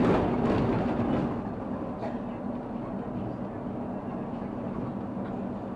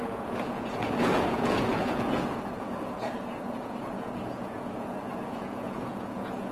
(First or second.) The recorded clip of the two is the first